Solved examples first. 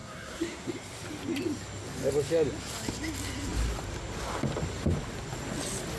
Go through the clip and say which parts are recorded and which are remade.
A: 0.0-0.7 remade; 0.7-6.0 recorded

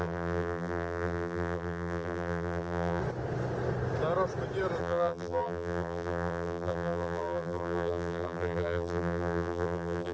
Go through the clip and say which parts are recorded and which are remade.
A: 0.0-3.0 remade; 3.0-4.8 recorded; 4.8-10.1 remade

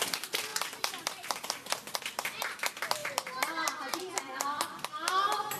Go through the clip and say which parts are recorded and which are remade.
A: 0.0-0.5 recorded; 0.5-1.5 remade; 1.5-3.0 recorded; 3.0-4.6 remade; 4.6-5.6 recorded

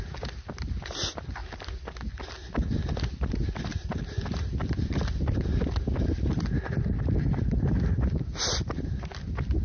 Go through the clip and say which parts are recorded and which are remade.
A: 0.0-3.7 recorded; 3.7-5.0 remade; 5.0-9.6 recorded